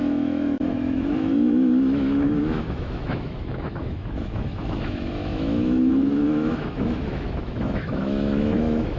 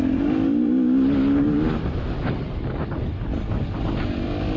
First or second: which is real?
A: second